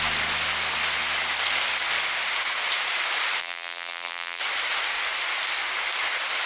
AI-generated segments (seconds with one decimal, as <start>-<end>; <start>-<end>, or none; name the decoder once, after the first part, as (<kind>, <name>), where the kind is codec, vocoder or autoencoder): 3.4-4.4 (vocoder, BigVGAN v2)